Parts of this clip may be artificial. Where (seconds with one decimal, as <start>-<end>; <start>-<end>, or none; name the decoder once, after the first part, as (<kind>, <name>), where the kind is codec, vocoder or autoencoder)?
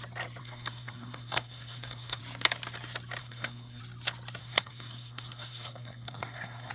0.4-2.2 (codec, SNAC); 3.2-3.8; 4.4-6.7